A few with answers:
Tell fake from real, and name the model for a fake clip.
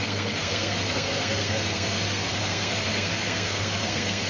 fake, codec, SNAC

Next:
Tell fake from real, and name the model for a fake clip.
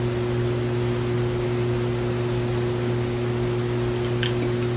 real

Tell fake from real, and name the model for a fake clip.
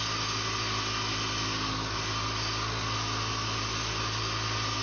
real